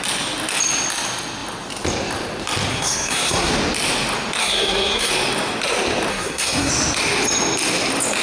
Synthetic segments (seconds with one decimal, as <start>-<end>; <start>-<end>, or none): 2.7-3.5; 4.4-5.1; 6.1-6.7